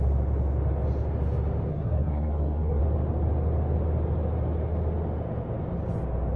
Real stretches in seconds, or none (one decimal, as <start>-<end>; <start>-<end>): 0.0-1.7; 2.8-6.4